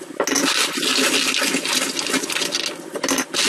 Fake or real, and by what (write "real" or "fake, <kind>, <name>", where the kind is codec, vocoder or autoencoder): real